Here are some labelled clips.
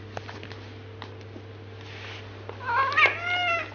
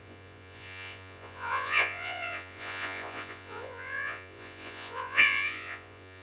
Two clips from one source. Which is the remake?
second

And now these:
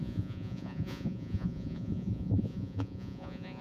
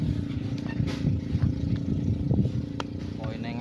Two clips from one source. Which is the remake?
first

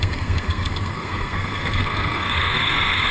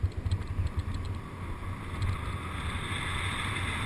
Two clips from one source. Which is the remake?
first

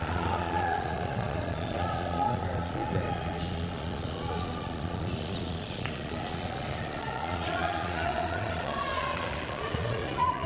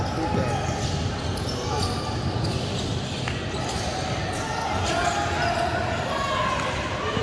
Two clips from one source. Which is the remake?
first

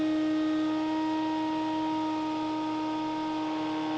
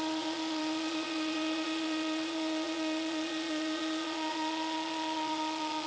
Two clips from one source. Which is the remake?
second